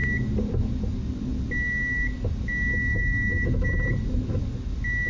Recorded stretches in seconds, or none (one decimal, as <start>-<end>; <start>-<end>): 0.0-2.7; 3.7-5.1